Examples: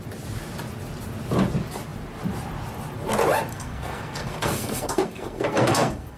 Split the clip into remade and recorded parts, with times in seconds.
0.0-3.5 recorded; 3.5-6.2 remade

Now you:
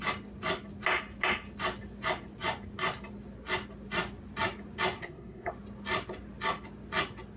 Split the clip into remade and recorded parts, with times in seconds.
0.0-5.0 recorded; 5.0-5.5 remade; 5.5-7.4 recorded

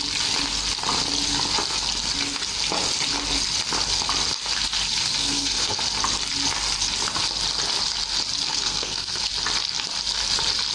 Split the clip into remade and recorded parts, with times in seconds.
0.0-5.2 recorded; 5.2-5.8 remade; 5.8-8.5 recorded; 8.5-9.3 remade; 9.3-10.7 recorded

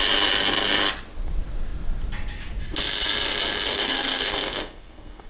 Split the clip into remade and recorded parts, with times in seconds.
0.0-3.7 recorded; 3.7-5.3 remade